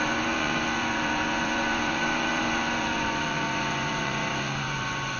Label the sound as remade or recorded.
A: remade